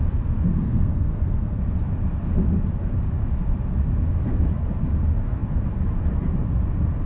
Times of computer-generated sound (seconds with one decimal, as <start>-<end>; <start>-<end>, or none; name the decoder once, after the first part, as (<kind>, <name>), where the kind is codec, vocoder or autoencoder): 0.6-1.6 (codec, SNAC)